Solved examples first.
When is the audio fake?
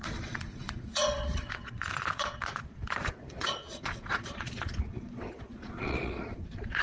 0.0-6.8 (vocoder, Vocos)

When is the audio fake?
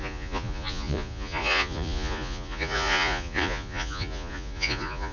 0.0-5.1 (vocoder, Vocos)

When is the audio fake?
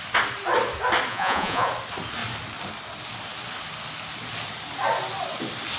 1.1-1.7 (vocoder, Vocos)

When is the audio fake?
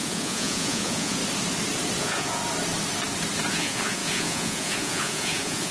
0.0-1.2 (vocoder, Vocos); 2.0-2.4; 3.5-5.7